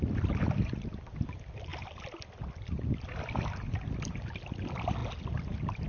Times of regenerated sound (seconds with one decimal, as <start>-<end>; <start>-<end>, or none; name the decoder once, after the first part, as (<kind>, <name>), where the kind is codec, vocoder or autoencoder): none